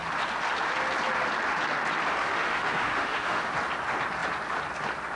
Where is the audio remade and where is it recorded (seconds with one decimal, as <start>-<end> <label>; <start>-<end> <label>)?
0.0-2.2 recorded; 2.2-3.5 remade; 3.5-5.2 recorded